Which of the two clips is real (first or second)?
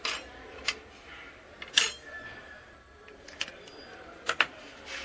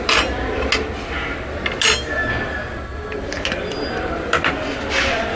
second